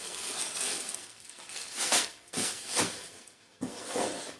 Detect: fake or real fake